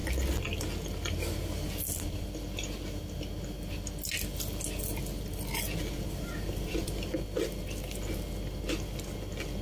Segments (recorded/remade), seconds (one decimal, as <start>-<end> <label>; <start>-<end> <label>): 0.0-9.6 recorded